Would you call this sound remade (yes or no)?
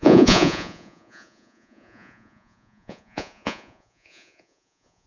yes